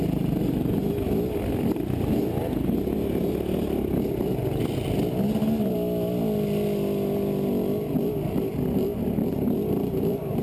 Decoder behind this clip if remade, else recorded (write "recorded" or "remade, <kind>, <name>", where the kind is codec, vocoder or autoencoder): recorded